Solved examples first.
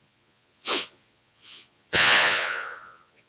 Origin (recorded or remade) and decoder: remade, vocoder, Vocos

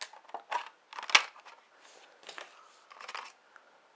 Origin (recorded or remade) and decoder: recorded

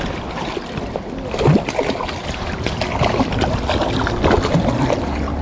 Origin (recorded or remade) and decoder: recorded